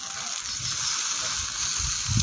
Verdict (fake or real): real